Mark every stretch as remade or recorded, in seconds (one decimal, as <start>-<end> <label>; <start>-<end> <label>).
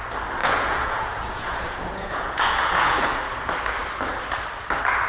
0.0-0.4 recorded; 0.4-3.2 remade; 3.2-5.1 recorded